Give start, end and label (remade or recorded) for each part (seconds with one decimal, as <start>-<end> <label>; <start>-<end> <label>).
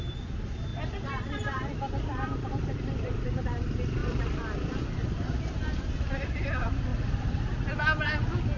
0.0-0.7 recorded; 0.7-3.3 remade; 3.3-4.0 recorded; 4.0-4.9 remade; 4.9-6.9 recorded; 6.9-7.4 remade; 7.4-8.6 recorded